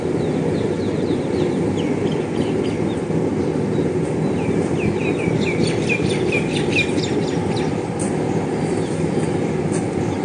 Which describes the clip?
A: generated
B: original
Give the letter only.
B